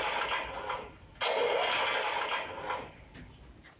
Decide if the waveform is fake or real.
real